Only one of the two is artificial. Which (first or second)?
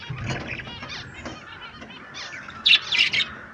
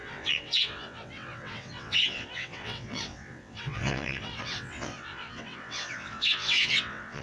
second